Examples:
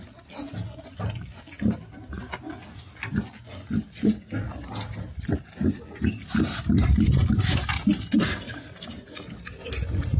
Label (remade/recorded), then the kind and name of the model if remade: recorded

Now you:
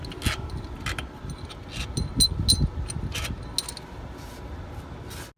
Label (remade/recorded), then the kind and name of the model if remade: recorded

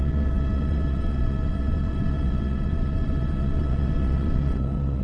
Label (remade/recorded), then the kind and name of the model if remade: remade, vocoder, WaveNeXt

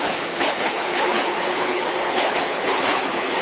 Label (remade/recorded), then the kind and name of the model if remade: remade, codec, HILCodec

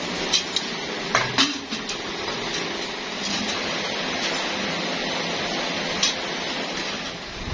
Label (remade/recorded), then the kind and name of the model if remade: recorded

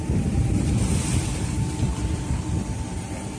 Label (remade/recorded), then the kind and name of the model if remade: recorded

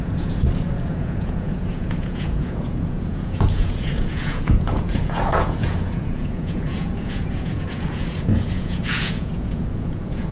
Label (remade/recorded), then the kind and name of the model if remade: remade, vocoder, Vocos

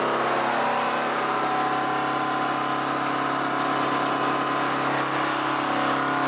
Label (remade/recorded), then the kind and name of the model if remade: recorded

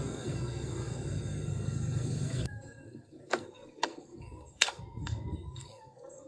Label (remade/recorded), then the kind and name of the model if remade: remade, codec, SNAC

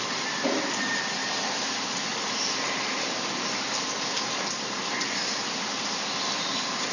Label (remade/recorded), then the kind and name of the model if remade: recorded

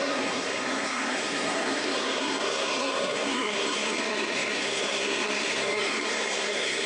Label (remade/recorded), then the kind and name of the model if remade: remade, codec, SNAC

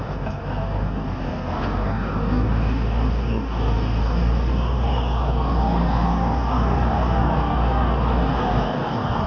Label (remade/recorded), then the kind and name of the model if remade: remade, codec, DAC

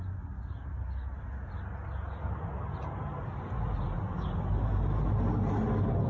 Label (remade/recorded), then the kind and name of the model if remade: recorded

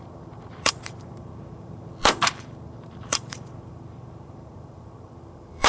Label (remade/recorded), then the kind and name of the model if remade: remade, vocoder, BigVGAN v2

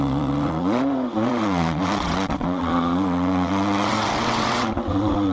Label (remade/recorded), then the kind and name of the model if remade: remade, vocoder, WaveNeXt